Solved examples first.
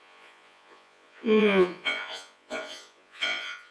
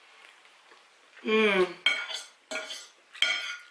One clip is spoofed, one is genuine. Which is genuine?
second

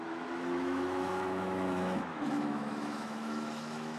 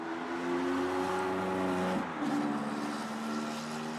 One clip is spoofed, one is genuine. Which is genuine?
second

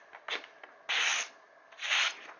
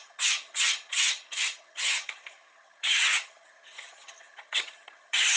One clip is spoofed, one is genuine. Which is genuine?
first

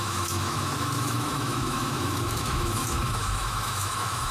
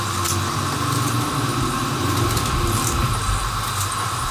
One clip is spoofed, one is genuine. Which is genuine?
second